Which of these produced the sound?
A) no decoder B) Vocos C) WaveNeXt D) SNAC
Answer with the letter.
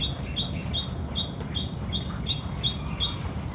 A